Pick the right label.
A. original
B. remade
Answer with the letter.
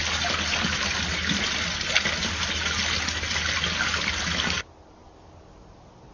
A